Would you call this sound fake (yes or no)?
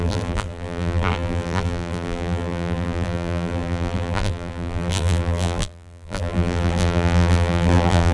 yes